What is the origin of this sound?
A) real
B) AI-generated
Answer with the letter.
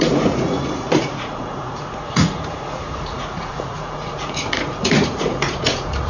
B